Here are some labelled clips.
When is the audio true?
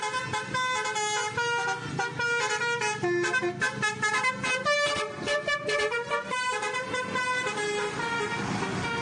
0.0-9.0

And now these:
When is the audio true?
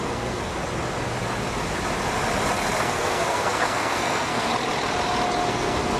0.5-2.8; 4.5-5.5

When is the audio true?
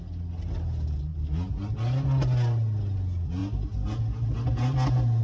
0.0-5.2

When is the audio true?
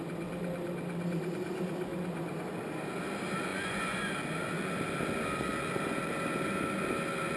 0.0-3.5; 4.1-7.4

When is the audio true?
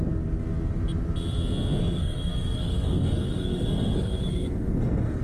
0.0-1.8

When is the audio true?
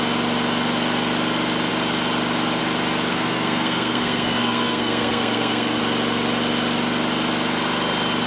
0.0-3.1; 5.8-8.3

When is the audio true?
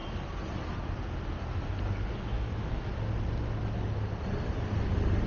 0.0-2.2; 2.9-5.3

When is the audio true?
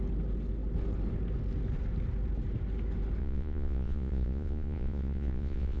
0.0-3.2